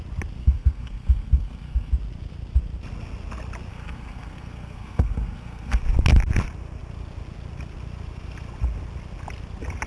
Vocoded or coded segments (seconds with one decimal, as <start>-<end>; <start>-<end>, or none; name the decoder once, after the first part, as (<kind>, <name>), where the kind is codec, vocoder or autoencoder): 0.4-1.9 (codec, SNAC); 3.7-5.8